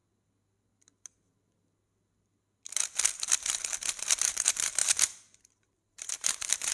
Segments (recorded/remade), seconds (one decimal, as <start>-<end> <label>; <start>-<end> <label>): 0.0-3.9 recorded; 3.9-6.7 remade